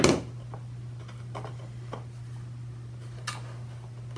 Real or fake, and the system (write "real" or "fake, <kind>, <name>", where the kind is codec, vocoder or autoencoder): real